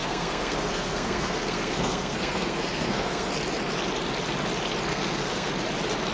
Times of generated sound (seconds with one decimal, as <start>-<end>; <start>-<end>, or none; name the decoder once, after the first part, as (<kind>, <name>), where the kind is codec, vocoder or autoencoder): 0.0-3.3 (codec, SNAC); 4.9-5.5